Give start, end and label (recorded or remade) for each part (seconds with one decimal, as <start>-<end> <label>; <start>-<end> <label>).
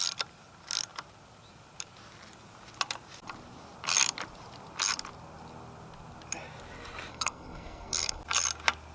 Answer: 0.0-7.1 recorded; 7.1-8.2 remade; 8.2-8.9 recorded